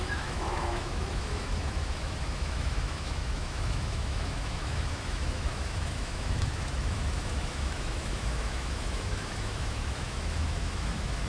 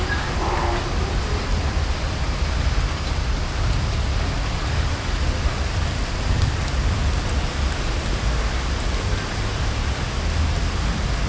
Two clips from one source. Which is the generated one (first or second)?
first